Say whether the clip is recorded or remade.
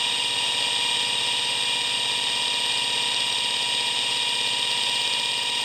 recorded